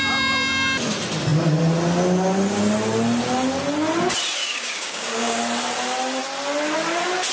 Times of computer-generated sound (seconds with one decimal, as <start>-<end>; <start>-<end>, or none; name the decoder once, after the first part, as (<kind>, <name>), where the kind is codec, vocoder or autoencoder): 4.4-5.4 (codec, DAC)